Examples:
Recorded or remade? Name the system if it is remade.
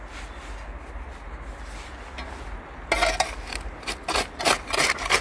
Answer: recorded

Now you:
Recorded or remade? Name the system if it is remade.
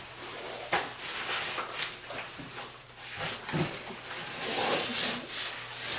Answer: recorded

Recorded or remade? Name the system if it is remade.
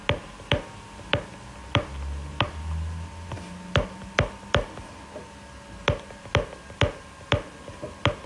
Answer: recorded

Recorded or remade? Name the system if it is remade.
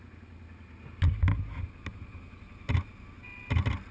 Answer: recorded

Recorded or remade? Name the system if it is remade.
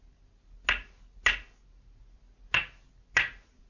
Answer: recorded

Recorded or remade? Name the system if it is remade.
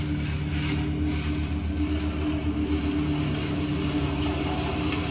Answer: recorded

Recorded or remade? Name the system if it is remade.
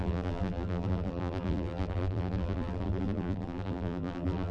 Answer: remade, vocoder, BigVGAN v2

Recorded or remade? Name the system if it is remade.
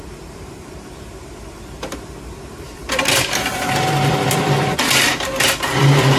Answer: remade, vocoder, BigVGAN v2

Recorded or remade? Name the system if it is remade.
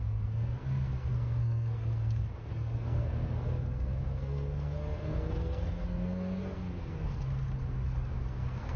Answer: remade, codec, SNAC